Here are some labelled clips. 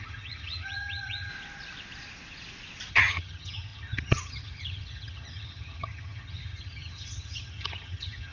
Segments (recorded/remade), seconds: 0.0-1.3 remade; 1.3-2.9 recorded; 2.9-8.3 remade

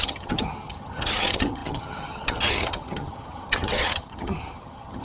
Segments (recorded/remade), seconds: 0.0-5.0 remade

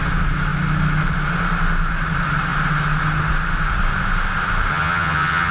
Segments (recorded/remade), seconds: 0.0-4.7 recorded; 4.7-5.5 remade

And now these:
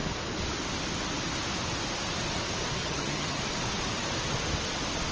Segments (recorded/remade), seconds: 0.0-2.8 recorded; 2.8-3.4 remade; 3.4-5.1 recorded

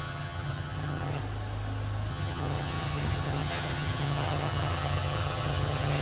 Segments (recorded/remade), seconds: 0.0-1.2 remade; 1.2-2.1 recorded; 2.1-6.0 remade